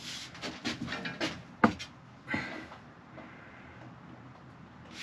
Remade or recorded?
recorded